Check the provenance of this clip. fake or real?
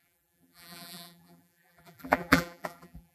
fake